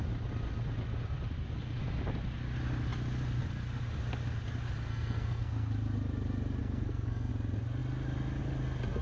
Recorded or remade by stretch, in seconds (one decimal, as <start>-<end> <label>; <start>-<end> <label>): 0.0-4.9 recorded; 4.9-5.7 remade; 5.7-6.6 recorded; 6.6-7.3 remade; 7.3-9.0 recorded

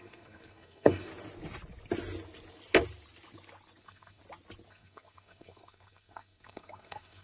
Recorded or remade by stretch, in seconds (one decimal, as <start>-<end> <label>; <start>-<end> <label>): 0.0-1.1 remade; 1.1-3.8 recorded; 3.8-4.2 remade; 4.2-4.7 recorded; 4.7-7.2 remade

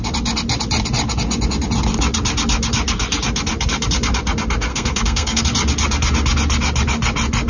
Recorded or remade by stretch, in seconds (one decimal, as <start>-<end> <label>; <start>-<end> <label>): 0.0-4.7 recorded; 4.7-5.4 remade; 5.4-7.5 recorded

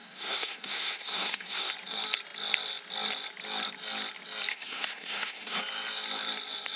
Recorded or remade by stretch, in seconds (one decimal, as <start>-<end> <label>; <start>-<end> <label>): 0.0-1.7 remade; 1.7-4.5 recorded; 4.5-5.6 remade; 5.6-6.8 recorded

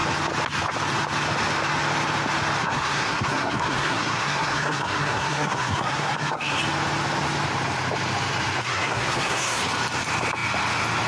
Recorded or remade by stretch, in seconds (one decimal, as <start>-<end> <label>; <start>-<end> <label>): 0.0-2.6 recorded; 2.6-6.6 remade; 6.6-8.6 recorded; 8.6-9.6 remade; 9.6-11.1 recorded